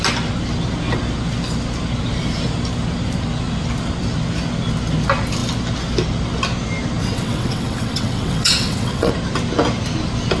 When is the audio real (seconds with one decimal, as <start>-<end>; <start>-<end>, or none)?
0.0-7.0; 9.1-10.4